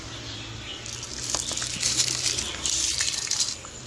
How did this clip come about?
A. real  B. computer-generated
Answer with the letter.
A